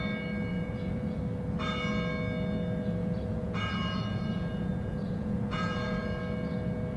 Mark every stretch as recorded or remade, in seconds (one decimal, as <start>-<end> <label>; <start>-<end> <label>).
0.0-0.5 recorded; 0.5-1.2 remade; 1.2-3.0 recorded; 3.0-6.2 remade; 6.2-7.0 recorded